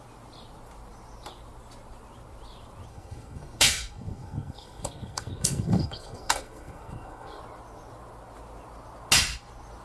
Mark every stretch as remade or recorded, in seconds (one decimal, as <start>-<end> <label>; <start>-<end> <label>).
0.0-2.9 recorded; 2.9-7.4 remade; 7.4-9.8 recorded